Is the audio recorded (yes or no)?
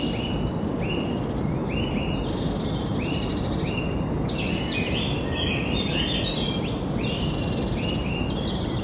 yes